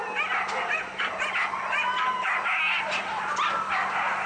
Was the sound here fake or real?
real